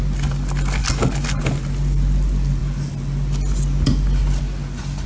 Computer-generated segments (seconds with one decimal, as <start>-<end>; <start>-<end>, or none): none